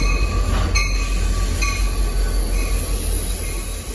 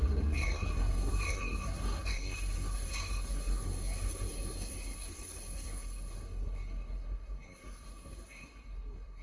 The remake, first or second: second